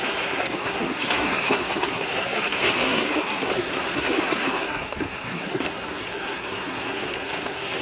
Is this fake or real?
fake